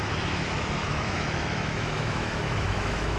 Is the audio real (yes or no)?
no